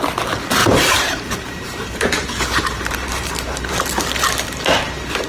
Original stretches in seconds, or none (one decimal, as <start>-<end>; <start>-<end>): 0.0-0.6; 3.7-5.3